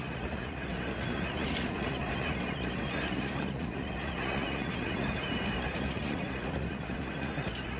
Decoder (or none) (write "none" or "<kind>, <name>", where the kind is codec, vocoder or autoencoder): vocoder, Vocos